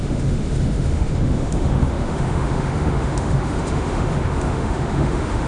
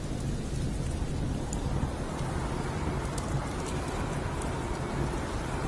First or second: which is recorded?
second